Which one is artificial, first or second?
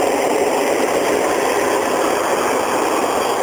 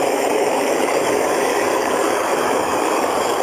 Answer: second